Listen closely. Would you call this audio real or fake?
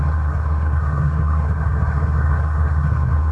fake